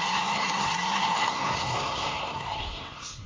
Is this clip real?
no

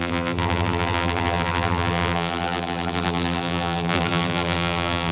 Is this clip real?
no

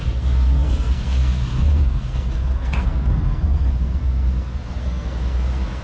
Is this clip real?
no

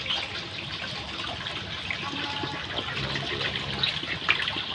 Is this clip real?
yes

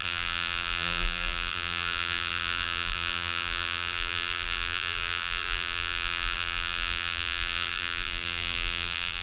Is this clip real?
no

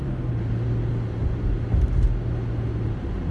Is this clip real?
yes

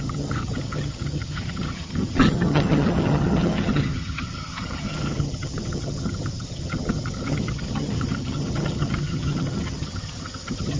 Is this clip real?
no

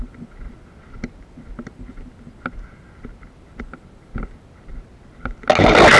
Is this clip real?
yes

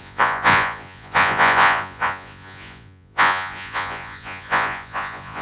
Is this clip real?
no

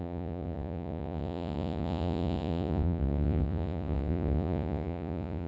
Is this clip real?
no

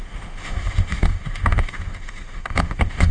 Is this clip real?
no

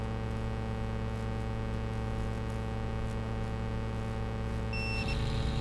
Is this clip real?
yes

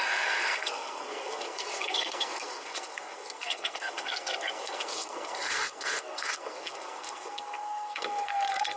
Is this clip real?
no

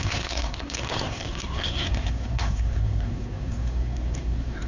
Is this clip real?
no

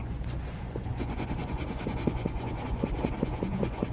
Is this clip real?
no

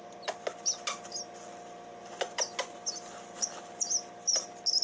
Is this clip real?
yes